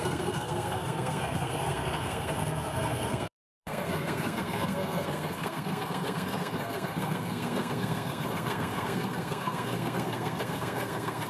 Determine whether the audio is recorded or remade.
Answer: remade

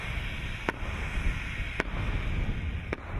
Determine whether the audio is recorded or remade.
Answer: recorded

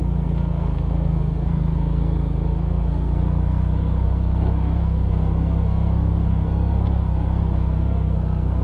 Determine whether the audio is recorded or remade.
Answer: remade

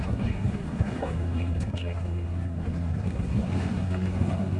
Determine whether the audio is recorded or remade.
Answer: remade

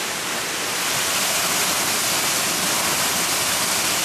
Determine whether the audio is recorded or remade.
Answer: recorded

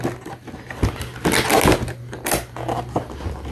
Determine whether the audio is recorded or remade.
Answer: recorded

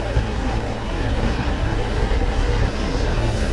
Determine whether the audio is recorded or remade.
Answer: remade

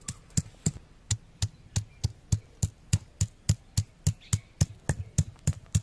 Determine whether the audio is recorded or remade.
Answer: recorded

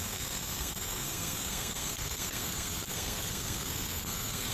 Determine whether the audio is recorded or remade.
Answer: remade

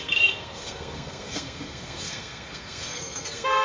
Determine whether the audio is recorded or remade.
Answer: remade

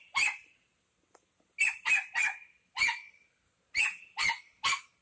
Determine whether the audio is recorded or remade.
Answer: recorded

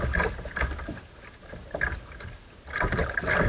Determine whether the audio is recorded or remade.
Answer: recorded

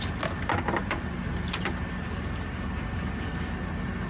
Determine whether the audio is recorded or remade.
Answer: recorded